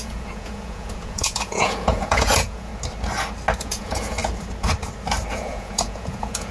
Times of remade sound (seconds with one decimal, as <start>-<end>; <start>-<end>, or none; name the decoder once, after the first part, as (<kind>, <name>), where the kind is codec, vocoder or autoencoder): 0.0-2.7 (vocoder, Vocos); 3.6-4.2; 5.3-6.5